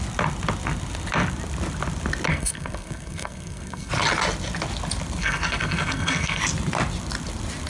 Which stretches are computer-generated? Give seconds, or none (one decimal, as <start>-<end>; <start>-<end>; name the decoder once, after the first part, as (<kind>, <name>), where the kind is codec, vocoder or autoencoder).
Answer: 2.3-3.9 (codec, SNAC); 5.2-6.4